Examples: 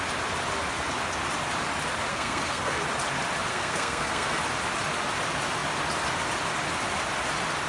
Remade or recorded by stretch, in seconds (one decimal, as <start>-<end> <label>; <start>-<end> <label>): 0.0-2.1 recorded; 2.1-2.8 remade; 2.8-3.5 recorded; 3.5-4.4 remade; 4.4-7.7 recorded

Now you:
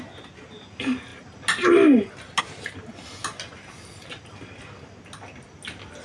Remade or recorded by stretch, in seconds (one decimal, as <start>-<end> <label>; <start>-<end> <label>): 0.0-6.0 recorded

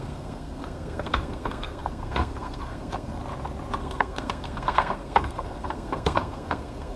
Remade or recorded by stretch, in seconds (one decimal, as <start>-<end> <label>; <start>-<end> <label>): 0.0-3.2 remade; 3.2-3.8 recorded; 3.8-7.0 remade